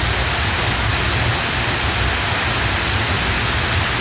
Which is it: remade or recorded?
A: recorded